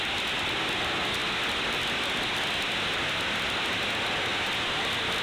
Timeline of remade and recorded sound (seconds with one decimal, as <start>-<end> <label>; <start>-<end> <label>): 0.0-5.2 recorded